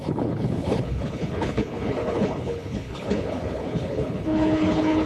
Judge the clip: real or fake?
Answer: fake